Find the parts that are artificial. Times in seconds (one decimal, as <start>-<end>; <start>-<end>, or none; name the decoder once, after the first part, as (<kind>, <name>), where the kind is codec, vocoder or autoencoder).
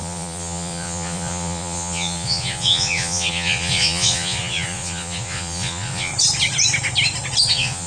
0.0-6.1 (vocoder, Vocos); 7.5-7.9